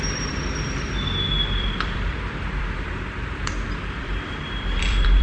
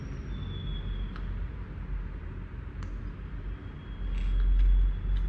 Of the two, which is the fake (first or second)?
first